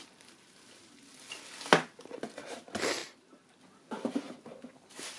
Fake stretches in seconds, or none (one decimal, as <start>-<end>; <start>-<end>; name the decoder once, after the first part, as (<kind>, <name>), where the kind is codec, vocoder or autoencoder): none